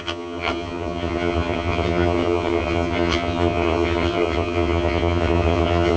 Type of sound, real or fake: fake